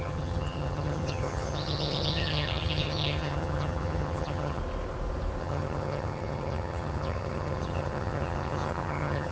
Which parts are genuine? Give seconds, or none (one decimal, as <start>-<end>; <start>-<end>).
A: 4.6-5.4